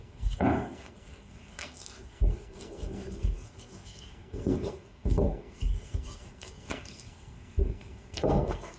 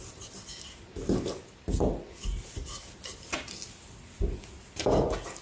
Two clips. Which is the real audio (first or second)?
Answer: second